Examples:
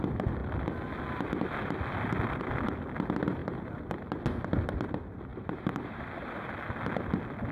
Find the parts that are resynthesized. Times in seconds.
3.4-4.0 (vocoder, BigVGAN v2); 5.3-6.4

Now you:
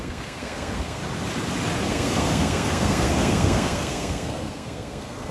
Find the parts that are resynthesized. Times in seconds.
0.0-1.0 (codec, SNAC); 1.9-5.3

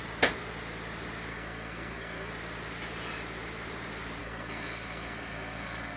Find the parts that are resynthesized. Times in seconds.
1.3-2.3 (codec, SNAC); 4.2-6.0

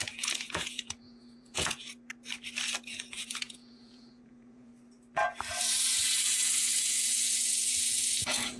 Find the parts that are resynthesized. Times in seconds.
0.0-1.9 (vocoder, Vocos); 2.8-4.7; 5.6-8.6

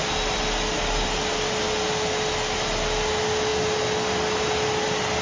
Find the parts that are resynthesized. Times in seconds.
none

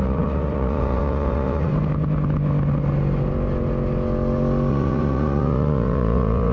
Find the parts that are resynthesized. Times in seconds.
0.0-1.7 (vocoder, Vocos); 4.7-6.5